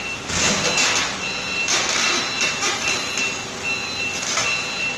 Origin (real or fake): real